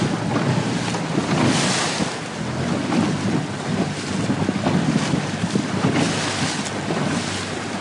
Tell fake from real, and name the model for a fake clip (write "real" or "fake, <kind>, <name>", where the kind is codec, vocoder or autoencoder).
real